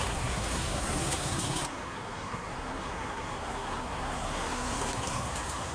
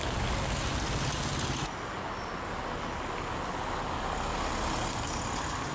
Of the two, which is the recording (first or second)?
second